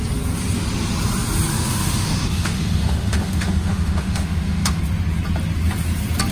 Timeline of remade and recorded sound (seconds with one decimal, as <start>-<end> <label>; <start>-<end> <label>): 0.0-1.5 recorded; 1.5-4.8 remade; 4.8-6.3 recorded